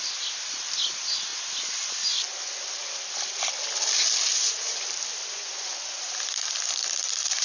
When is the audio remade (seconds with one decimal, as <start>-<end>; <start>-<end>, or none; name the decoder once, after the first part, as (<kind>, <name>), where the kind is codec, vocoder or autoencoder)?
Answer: 5.4-6.0 (vocoder, Vocos)